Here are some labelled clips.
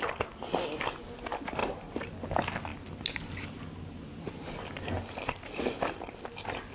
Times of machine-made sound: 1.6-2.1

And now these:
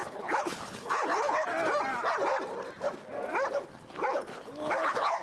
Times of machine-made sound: 0.0-1.5; 4.1-5.2

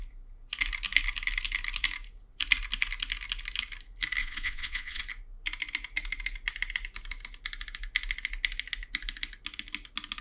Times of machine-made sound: 4.2-5.0

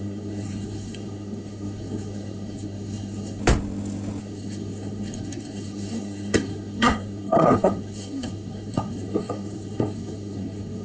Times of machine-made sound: 0.0-3.4; 4.2-10.8

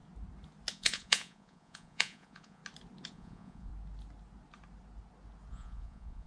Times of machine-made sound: 0.7-2.6; 3.1-3.7; 5.5-6.3